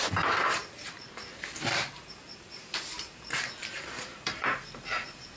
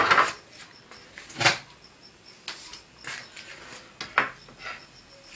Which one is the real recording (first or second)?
second